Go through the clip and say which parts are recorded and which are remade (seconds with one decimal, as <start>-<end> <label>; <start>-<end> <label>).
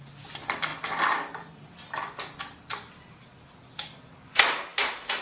0.0-5.2 recorded